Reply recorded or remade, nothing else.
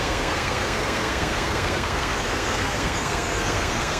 remade